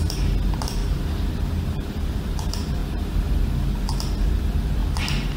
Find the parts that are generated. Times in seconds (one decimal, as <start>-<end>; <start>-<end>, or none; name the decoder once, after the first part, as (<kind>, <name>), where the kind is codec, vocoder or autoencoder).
0.0-0.8 (vocoder, BigVGAN v2); 1.3-2.8; 3.4-4.8